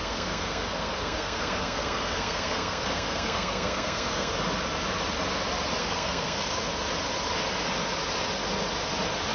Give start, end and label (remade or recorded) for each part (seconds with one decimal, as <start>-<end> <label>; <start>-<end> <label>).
0.0-4.3 remade; 4.3-5.8 recorded; 5.8-6.6 remade; 6.6-9.3 recorded